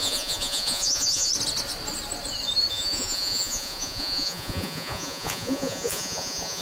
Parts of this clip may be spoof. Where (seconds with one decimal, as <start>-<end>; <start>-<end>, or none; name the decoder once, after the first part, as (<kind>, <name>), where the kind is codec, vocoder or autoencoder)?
0.0-1.3 (vocoder, Vocos); 2.7-6.6